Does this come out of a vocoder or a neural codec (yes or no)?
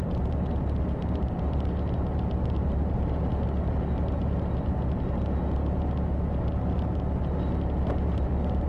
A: no